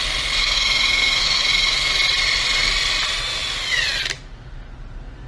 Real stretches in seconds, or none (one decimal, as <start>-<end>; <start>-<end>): 0.0-0.4; 1.9-5.3